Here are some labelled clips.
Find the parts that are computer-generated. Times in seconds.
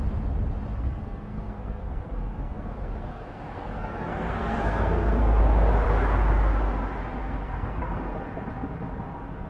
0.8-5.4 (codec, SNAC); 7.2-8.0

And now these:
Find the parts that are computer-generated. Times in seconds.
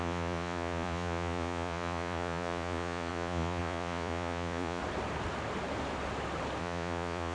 0.0-4.8 (vocoder, Vocos); 6.6-7.3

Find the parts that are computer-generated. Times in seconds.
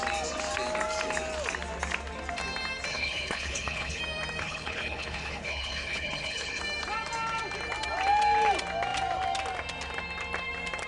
2.9-4.0 (codec, HILCodec); 4.4-6.6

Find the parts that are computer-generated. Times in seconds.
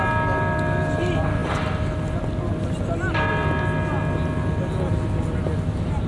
none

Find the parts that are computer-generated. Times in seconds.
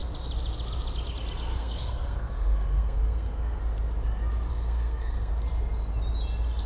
1.5-3.6 (codec, SNAC); 4.5-5.3